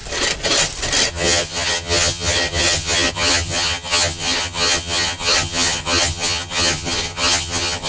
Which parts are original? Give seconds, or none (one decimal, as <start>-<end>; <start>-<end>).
0.0-1.1